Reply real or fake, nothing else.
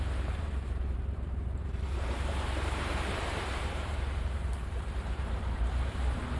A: fake